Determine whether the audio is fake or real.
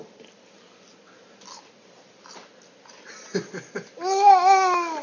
real